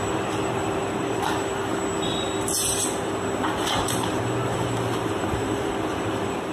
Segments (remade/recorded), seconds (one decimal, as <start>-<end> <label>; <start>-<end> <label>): 0.0-3.6 recorded; 3.6-4.1 remade; 4.1-4.5 recorded; 4.5-5.7 remade; 5.7-6.5 recorded